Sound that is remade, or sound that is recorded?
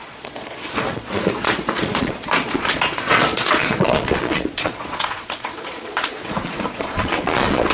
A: remade